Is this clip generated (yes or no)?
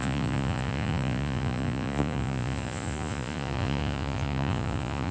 yes